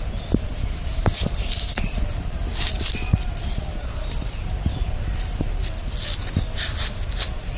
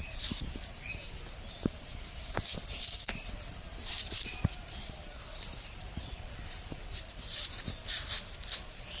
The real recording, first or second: first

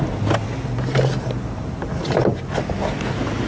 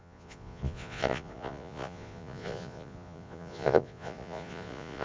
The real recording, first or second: first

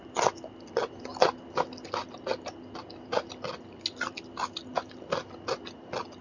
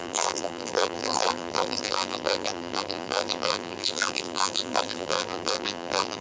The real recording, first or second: first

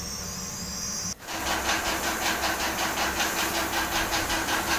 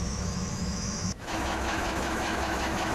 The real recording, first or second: first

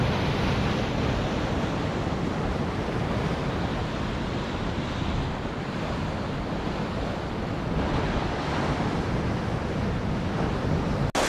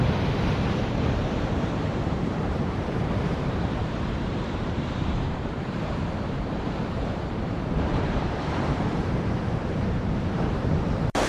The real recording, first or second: first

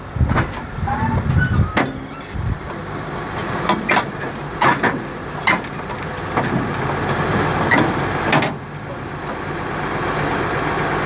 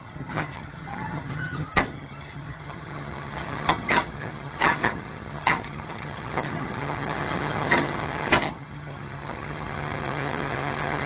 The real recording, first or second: first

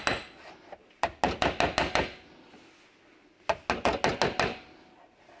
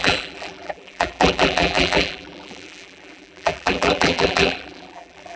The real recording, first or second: first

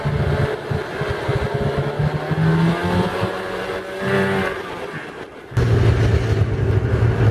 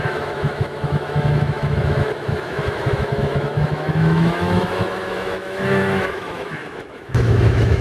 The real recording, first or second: first